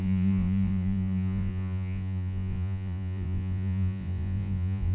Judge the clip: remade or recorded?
remade